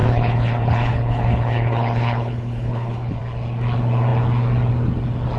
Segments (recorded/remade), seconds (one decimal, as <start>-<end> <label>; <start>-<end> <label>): 0.0-3.2 remade; 3.2-5.4 recorded